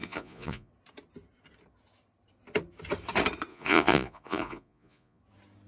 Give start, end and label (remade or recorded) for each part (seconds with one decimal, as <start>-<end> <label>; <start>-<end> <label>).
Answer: 0.0-0.7 remade; 0.7-3.5 recorded; 3.5-5.2 remade; 5.2-5.7 recorded